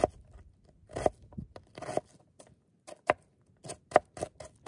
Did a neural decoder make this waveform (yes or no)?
no